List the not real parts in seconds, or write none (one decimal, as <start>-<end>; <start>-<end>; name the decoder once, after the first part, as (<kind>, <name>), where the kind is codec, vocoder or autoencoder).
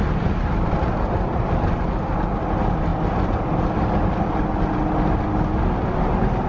none